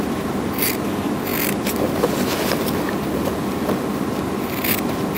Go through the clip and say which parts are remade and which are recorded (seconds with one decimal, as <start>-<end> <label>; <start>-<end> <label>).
0.0-5.2 recorded